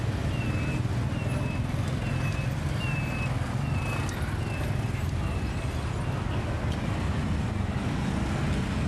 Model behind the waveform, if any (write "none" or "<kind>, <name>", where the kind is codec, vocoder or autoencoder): none